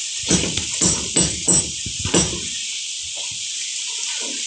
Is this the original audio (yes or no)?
yes